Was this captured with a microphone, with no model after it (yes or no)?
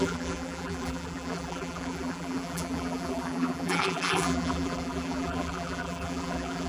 no